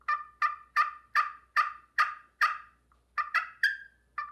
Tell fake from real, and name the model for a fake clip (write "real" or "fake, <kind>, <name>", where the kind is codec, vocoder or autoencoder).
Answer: real